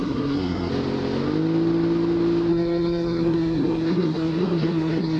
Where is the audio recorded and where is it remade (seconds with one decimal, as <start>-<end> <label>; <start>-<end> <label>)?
0.0-0.7 remade; 0.7-2.5 recorded; 2.5-5.2 remade